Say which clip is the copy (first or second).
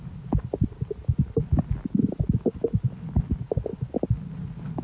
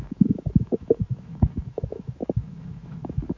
second